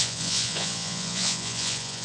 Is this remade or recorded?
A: remade